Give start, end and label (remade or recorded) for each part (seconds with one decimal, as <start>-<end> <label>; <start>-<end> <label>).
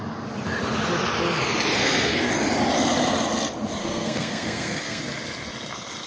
0.0-1.8 recorded; 1.8-2.3 remade; 2.3-3.8 recorded; 3.8-5.0 remade; 5.0-6.1 recorded